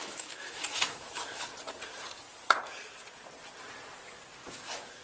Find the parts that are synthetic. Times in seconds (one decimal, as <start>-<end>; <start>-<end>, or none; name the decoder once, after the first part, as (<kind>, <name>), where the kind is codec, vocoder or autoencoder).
0.0-1.5 (autoencoder, DAC-VAE); 4.5-5.0